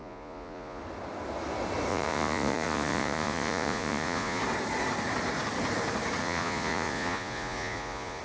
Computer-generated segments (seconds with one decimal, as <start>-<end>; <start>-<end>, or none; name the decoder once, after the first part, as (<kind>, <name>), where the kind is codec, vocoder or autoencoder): 0.0-0.8 (vocoder, Vocos); 1.9-4.4; 6.2-8.2